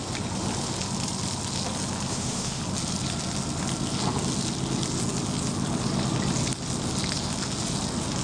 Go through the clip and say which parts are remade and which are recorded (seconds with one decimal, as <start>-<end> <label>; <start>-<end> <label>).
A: 0.0-2.1 recorded; 2.1-2.6 remade; 2.6-8.2 recorded